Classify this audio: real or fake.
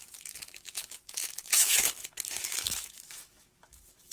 fake